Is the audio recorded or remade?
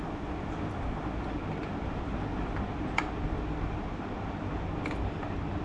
recorded